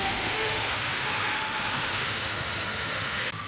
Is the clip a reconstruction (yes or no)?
yes